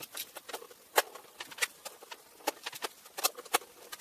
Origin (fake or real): real